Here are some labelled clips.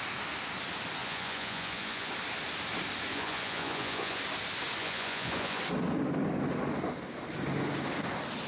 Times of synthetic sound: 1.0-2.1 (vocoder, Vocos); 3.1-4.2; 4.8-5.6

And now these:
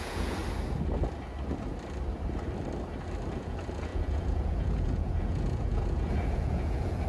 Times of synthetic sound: 0.0-0.4 (vocoder, Vocos); 3.3-7.1

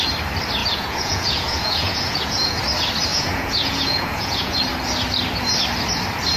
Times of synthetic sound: 0.6-2.6 (vocoder, Vocos); 3.1-4.6

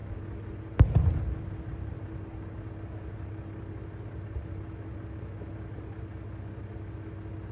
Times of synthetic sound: none

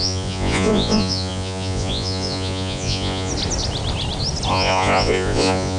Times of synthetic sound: 0.0-3.3 (vocoder, Vocos); 4.5-5.8

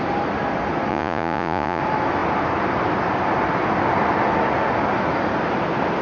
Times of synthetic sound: 0.9-1.8 (vocoder, Vocos)

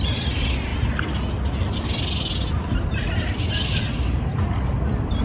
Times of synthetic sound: none